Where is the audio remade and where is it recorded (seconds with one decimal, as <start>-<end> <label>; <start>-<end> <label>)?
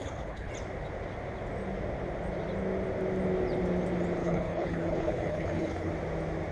0.0-0.5 remade; 0.5-4.2 recorded; 4.2-5.9 remade; 5.9-6.5 recorded